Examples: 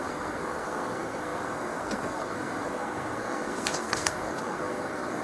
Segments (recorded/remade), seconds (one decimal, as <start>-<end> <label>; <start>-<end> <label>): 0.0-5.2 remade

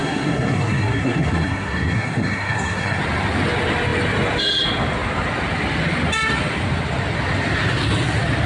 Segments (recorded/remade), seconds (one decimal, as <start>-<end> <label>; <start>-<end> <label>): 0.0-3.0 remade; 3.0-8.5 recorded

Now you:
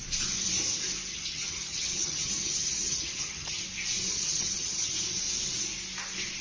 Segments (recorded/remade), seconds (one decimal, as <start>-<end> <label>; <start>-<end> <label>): 0.0-1.1 recorded; 1.1-3.6 remade; 3.6-4.1 recorded; 4.1-4.9 remade; 4.9-6.4 recorded

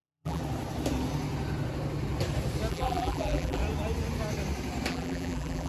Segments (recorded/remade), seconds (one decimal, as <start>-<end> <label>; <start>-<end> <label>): 0.0-0.4 remade; 0.4-2.7 recorded; 2.7-3.6 remade; 3.6-4.9 recorded; 4.9-5.7 remade

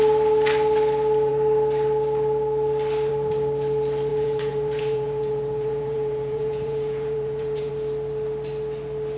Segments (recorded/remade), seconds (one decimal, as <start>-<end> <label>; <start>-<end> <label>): 0.0-4.1 recorded; 4.1-7.7 remade; 7.7-9.2 recorded

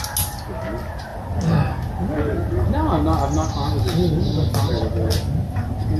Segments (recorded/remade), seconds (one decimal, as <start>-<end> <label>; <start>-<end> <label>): 0.0-6.0 recorded

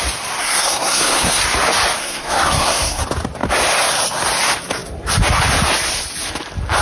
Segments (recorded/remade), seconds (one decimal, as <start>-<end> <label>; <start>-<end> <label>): 0.0-0.4 recorded; 0.4-1.4 remade; 1.4-2.0 recorded; 2.0-3.0 remade; 3.0-6.8 recorded

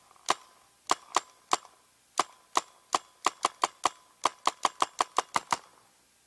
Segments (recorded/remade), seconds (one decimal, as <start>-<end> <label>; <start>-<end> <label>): 0.0-6.3 recorded